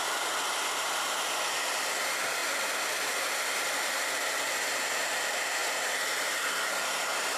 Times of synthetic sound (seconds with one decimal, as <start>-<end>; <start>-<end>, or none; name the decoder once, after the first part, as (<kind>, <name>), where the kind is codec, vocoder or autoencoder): none